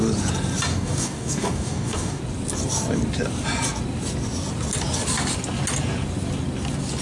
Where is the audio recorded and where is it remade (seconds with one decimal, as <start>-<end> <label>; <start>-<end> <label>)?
0.0-0.7 recorded; 0.7-2.2 remade; 2.2-7.0 recorded